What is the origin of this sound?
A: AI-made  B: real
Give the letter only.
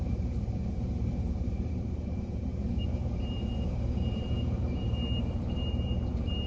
A